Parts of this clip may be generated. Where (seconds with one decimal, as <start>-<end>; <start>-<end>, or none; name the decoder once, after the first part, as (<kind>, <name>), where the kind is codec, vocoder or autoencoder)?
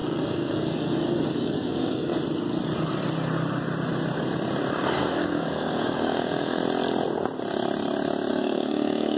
0.0-2.1 (codec, DAC); 4.7-6.6; 8.3-9.2